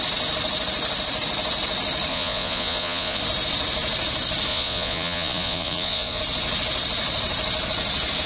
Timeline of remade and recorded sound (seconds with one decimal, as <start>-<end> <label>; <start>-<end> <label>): 0.0-2.1 recorded; 2.1-3.2 remade; 3.2-4.5 recorded; 4.5-6.2 remade; 6.2-8.3 recorded